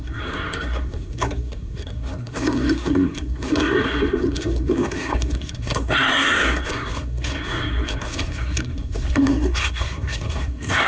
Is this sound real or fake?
fake